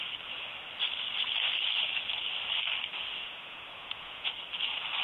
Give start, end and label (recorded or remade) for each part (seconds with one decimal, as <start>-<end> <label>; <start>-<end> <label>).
0.0-3.2 recorded; 3.2-4.3 remade; 4.3-5.0 recorded